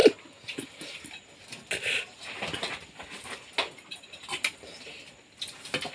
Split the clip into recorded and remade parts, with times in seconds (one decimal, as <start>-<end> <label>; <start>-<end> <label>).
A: 0.0-5.9 recorded